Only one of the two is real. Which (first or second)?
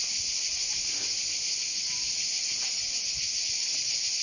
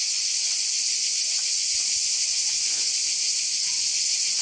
first